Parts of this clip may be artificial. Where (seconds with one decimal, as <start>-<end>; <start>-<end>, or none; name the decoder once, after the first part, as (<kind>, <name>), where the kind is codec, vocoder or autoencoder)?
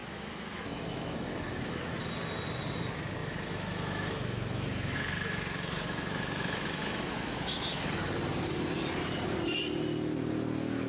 0.0-1.9 (autoencoder, DAC-VAE); 3.2-8.1